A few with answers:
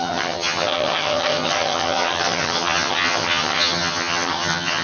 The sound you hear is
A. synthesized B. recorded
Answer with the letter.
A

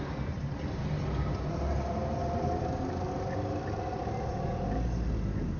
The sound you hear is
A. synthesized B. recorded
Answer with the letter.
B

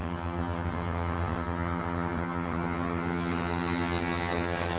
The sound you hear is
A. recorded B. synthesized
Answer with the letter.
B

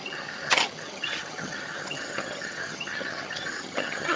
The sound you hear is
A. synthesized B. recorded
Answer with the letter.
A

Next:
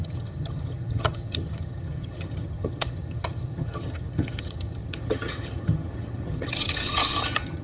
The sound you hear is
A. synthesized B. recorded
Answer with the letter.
A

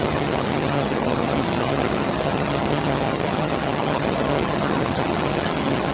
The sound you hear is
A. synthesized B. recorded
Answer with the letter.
A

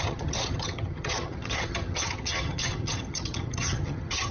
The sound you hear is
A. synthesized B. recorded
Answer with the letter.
A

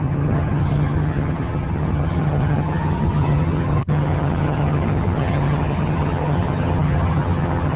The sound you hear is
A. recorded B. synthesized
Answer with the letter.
B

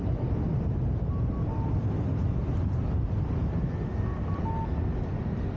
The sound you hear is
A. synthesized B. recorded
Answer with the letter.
B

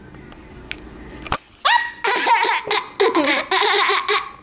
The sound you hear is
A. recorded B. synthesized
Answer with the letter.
A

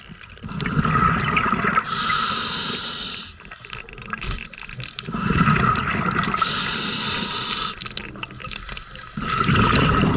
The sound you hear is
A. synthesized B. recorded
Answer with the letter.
B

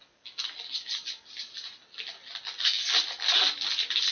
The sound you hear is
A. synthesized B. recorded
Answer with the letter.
B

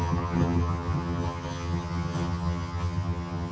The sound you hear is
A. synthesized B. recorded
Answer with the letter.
A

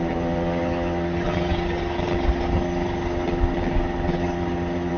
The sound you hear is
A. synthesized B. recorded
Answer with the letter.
B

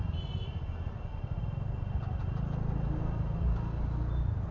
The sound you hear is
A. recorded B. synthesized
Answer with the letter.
A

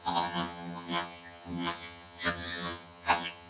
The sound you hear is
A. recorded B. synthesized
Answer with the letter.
B